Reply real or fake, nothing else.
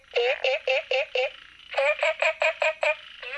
real